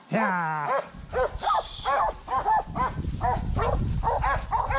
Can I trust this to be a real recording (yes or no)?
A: yes